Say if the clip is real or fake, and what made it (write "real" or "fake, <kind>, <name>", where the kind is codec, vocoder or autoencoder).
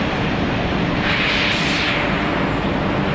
real